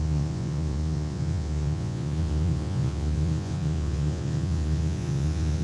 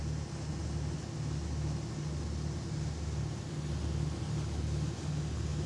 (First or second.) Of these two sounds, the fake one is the first